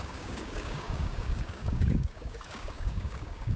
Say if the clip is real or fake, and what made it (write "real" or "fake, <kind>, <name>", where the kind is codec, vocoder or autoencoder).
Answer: fake, codec, DAC